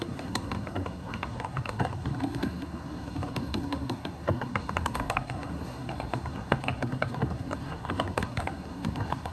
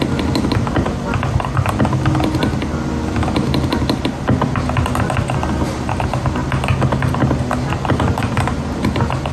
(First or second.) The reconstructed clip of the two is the first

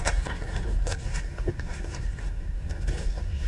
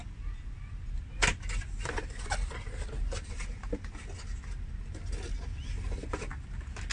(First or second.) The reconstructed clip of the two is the first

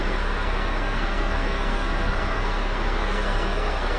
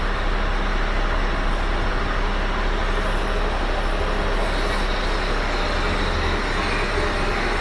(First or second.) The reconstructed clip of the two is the first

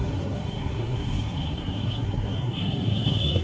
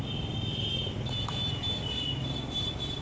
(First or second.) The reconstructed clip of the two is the first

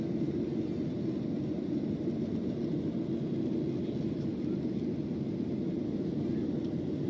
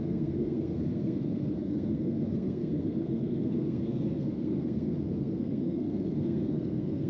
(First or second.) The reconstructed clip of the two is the second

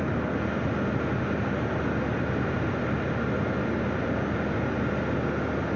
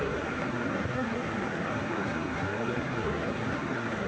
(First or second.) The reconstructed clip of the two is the second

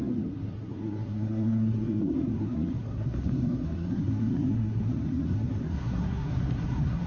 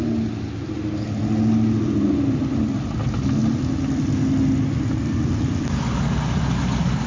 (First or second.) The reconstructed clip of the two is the first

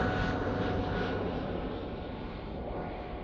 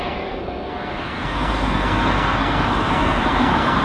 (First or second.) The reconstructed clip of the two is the second